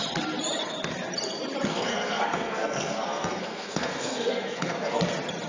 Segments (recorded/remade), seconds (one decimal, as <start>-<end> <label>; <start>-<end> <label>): 0.0-1.7 recorded; 1.7-5.0 remade; 5.0-5.5 recorded